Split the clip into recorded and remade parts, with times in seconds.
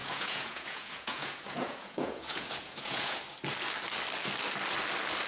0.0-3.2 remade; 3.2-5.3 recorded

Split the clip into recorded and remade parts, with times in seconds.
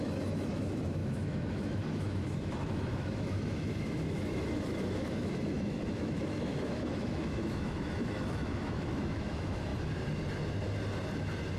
0.0-9.7 remade; 9.7-11.6 recorded